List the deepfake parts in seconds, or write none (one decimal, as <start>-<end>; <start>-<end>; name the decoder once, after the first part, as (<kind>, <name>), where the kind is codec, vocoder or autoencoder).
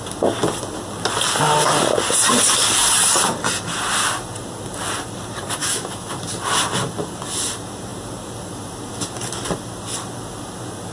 5.6-6.1 (autoencoder, DAC-VAE)